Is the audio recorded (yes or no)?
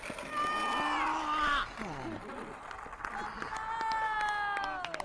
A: yes